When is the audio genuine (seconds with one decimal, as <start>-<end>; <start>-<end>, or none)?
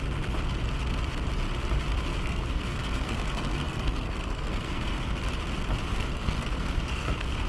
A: 0.0-2.1; 5.2-5.9